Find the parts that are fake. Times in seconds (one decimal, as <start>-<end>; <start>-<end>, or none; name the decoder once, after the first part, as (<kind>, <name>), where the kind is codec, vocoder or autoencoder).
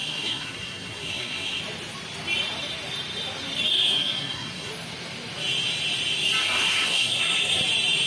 0.0-1.6 (codec, SNAC); 3.7-4.7; 6.4-7.6